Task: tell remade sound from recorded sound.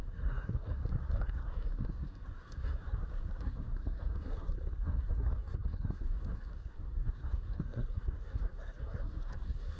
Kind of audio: remade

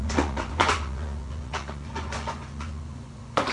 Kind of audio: remade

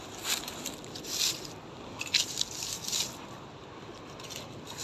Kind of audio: recorded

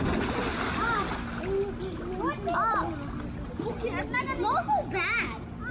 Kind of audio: recorded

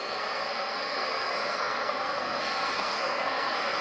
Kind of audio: remade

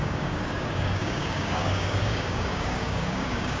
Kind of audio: remade